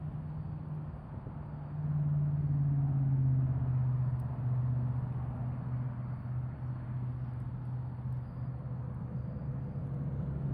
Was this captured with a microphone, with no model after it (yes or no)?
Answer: yes